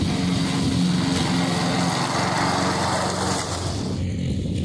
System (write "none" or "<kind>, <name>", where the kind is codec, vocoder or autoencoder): none